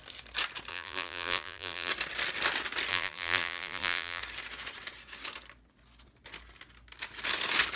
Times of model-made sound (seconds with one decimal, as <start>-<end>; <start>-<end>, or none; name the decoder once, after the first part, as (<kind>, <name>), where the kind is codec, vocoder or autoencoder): 0.7-1.9 (vocoder, BigVGAN v2); 2.9-4.2